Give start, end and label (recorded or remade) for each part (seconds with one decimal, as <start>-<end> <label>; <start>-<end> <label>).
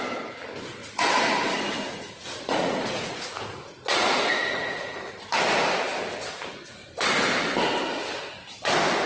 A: 0.0-0.8 recorded; 0.8-5.1 remade; 5.1-9.1 recorded